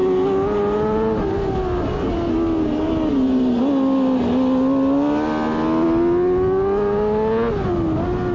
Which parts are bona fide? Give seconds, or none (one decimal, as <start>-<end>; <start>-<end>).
0.0-8.3